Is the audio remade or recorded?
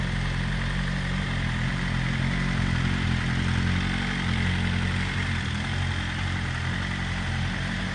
recorded